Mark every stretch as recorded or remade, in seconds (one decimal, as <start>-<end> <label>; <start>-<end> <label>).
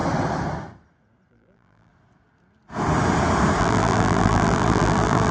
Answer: 0.0-1.3 recorded; 1.3-1.9 remade; 1.9-3.6 recorded; 3.6-5.3 remade